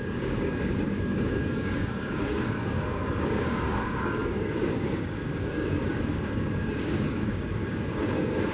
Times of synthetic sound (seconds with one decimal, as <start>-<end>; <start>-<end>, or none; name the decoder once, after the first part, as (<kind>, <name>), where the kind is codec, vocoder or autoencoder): 0.0-8.5 (codec, DAC)